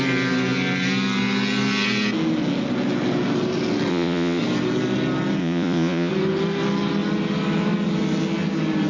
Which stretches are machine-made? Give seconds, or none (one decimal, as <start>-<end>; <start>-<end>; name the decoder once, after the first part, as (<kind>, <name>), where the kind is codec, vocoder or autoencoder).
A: 3.9-4.4 (vocoder, Vocos); 5.4-6.1